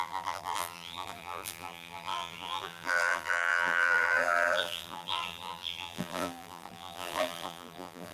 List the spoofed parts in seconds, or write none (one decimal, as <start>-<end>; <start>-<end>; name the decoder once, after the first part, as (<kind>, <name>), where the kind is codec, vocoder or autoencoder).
0.0-8.1 (vocoder, BigVGAN v2)